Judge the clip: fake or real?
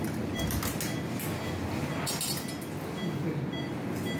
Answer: real